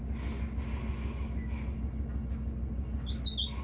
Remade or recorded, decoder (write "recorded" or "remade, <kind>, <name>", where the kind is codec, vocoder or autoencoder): recorded